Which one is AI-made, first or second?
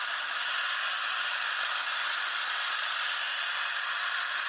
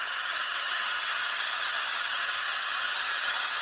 second